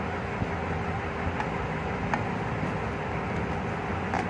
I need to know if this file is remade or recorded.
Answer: recorded